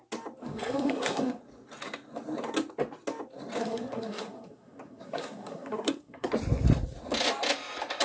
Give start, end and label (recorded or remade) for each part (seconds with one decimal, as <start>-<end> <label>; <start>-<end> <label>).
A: 0.0-0.4 recorded; 0.4-1.4 remade; 1.4-3.6 recorded; 3.6-6.3 remade; 6.3-8.0 recorded